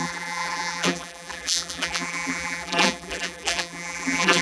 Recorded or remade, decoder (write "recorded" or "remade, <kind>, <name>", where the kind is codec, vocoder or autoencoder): remade, vocoder, BigVGAN v2